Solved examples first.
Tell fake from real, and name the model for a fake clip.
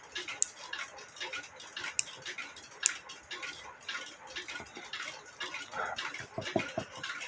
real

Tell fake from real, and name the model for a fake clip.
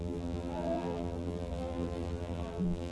fake, vocoder, BigVGAN v2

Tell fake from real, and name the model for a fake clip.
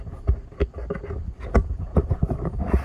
real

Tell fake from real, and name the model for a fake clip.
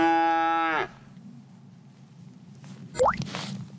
real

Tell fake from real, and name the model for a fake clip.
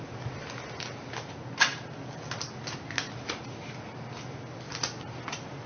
real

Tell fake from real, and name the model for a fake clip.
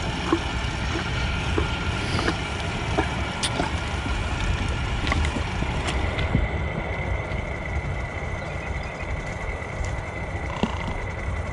real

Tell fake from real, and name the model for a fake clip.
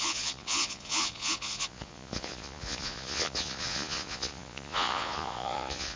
fake, vocoder, Vocos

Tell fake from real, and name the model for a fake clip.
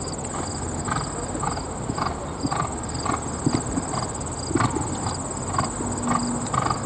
real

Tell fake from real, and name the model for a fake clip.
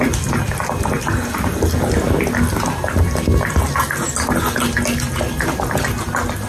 real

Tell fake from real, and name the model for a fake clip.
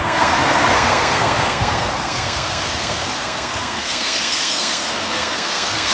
fake, codec, SNAC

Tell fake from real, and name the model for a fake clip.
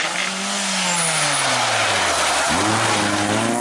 real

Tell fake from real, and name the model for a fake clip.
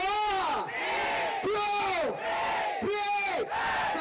real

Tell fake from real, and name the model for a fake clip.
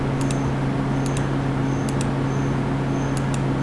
real